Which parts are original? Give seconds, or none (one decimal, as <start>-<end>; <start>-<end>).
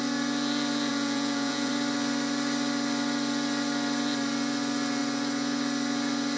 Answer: 0.0-0.9; 1.7-6.4